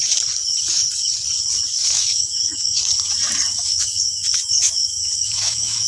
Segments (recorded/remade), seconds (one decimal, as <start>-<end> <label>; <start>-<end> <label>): 0.0-1.7 recorded; 1.7-2.8 remade; 2.8-3.5 recorded; 3.5-5.9 remade